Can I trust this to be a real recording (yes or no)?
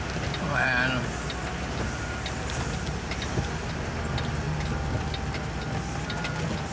yes